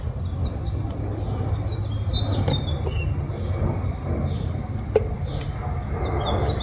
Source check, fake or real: real